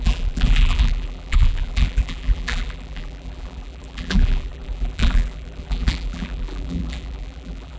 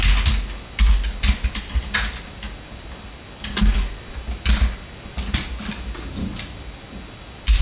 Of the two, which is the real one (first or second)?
second